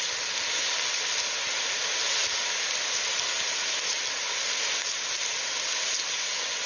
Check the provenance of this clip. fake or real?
real